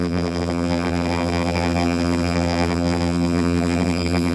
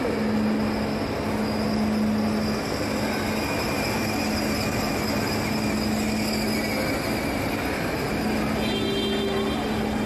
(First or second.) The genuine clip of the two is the second